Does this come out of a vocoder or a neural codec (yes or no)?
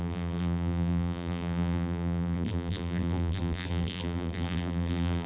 yes